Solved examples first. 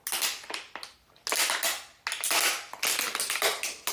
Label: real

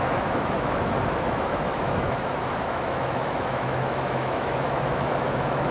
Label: fake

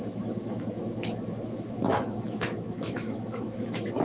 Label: fake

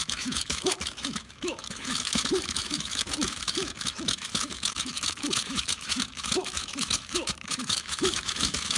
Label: fake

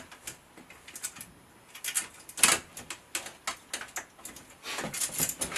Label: real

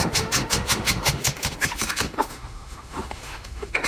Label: fake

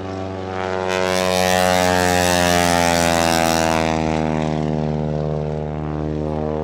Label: real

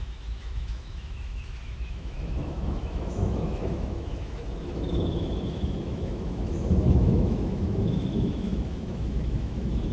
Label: fake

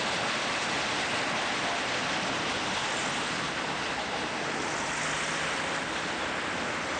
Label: real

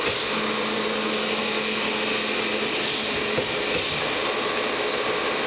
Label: real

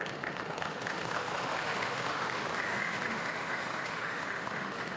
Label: fake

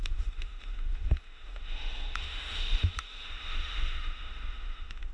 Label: fake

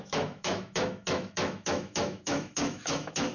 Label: fake